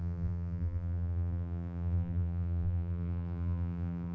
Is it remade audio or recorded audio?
remade